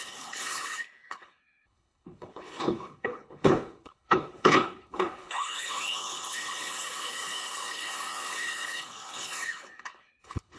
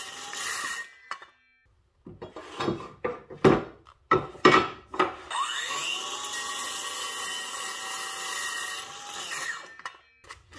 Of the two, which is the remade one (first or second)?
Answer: first